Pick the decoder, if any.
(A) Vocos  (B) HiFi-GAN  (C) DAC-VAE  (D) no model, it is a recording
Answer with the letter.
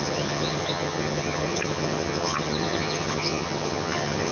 B